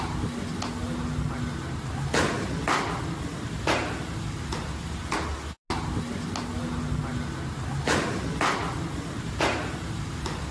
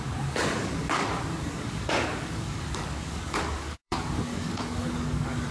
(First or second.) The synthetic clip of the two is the second